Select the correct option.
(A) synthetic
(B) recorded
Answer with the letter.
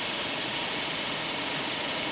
A